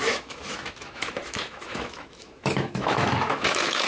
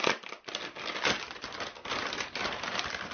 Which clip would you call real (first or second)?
second